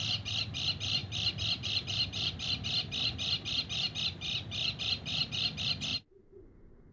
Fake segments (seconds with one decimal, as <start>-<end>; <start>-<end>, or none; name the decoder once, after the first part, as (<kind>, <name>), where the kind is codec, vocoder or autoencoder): none